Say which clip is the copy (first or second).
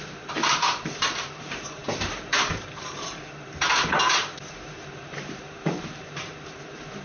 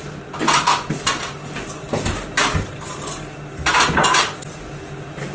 first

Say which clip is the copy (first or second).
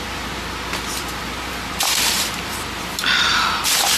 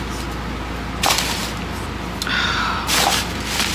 first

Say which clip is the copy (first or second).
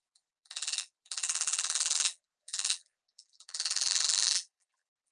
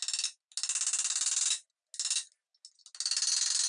first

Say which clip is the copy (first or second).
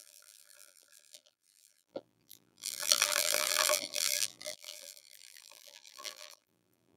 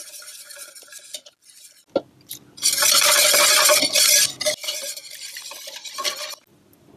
first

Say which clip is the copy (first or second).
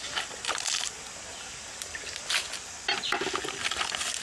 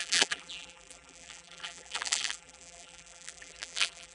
second